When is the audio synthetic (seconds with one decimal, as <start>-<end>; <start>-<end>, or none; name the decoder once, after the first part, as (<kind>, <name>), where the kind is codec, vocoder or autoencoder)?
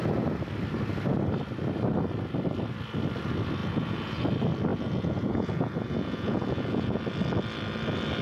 3.6-4.2 (vocoder, Vocos); 4.7-7.0